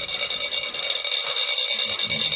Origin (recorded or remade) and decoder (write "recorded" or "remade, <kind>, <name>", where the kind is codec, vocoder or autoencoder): recorded